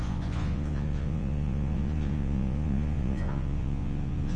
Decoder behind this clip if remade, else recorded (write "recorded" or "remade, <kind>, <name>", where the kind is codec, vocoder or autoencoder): remade, vocoder, Vocos